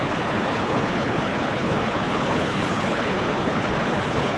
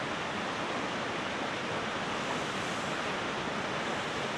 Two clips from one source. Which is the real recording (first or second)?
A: second